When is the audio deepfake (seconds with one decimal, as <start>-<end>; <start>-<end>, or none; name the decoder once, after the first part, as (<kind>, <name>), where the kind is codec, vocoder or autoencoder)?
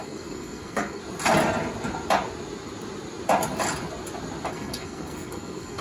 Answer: 0.0-1.0 (codec, SNAC); 4.5-5.8